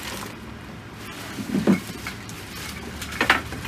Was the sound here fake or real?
fake